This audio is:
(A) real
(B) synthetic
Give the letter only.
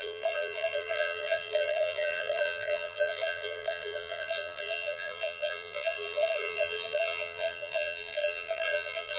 B